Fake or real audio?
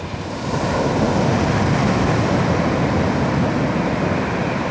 real